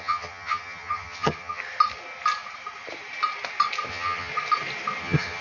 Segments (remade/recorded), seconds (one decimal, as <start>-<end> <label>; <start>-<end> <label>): 0.0-1.6 remade; 1.6-3.9 recorded; 3.9-4.3 remade; 4.3-5.0 recorded; 5.0-5.4 remade